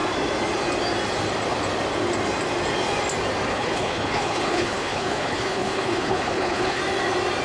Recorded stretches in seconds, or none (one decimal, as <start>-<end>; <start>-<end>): 0.0-3.5; 6.8-7.4